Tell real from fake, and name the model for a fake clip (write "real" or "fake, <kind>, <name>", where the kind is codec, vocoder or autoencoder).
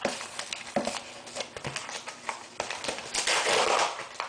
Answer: real